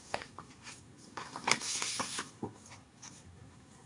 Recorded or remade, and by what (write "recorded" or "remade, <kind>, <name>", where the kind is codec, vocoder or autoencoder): remade, codec, SNAC